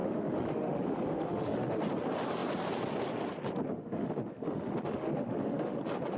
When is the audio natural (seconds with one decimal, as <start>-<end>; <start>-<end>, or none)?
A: 1.8-3.7; 5.8-6.2